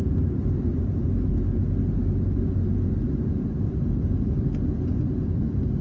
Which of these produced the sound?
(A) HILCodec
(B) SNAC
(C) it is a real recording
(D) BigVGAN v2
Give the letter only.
C